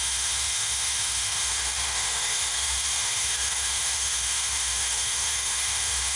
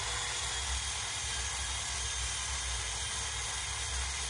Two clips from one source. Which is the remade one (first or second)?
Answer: first